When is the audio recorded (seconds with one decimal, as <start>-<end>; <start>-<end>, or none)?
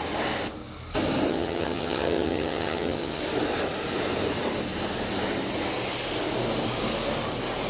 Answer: 0.0-1.3; 3.2-7.7